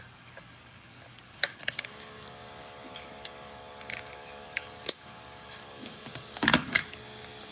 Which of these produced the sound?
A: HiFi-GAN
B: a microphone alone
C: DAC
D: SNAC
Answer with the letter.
C